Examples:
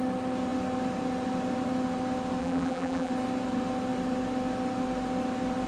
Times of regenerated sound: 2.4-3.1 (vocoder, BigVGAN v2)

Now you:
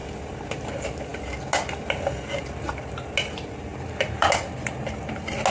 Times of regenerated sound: 3.7-4.3 (vocoder, BigVGAN v2)